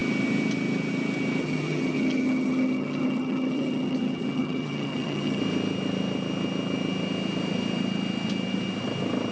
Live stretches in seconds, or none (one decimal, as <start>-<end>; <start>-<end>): 0.0-1.4; 5.4-9.3